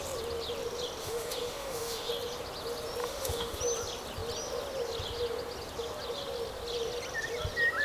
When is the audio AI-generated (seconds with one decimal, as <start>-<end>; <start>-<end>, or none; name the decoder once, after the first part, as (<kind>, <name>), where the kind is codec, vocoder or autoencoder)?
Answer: 1.0-2.1 (autoencoder, DAC-VAE); 3.0-3.6